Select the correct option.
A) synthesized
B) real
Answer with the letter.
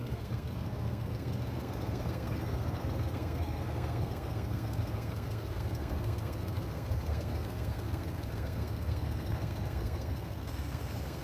A